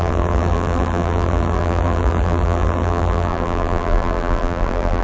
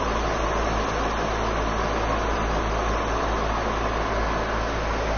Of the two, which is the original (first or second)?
second